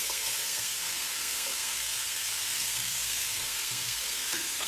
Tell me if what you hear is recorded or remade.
remade